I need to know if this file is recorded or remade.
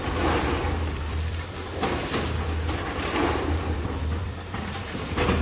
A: remade